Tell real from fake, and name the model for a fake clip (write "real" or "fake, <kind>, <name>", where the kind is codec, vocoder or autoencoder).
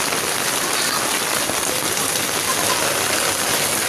real